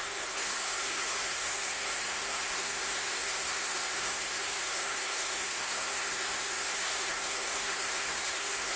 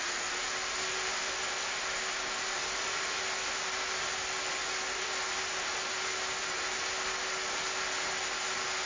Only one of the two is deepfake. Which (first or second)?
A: first